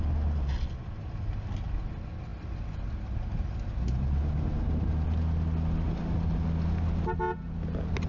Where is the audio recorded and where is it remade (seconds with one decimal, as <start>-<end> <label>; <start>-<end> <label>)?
0.0-8.1 recorded